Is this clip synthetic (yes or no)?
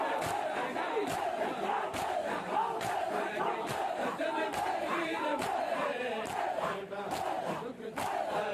yes